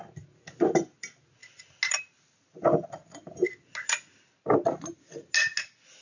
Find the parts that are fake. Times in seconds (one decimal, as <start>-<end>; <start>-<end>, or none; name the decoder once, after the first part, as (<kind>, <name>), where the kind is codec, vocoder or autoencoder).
none